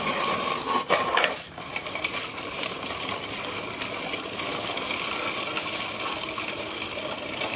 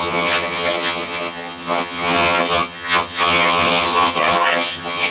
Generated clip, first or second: second